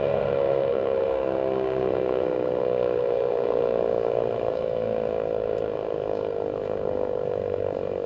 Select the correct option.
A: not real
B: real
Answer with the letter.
A